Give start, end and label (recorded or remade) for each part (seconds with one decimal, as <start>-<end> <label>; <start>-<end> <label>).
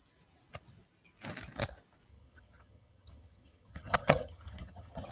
0.0-2.1 recorded; 2.1-5.1 remade